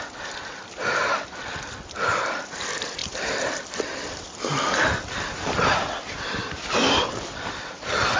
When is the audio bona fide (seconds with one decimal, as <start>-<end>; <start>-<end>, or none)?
0.0-3.0